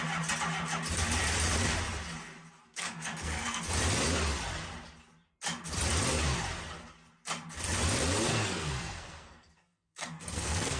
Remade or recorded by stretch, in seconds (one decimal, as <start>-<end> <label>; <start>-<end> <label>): 0.0-2.6 recorded; 2.6-3.6 remade; 3.6-8.3 recorded; 8.3-10.8 remade